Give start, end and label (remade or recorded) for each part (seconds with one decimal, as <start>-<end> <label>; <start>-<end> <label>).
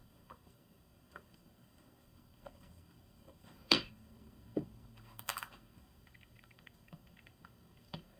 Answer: 0.0-8.2 remade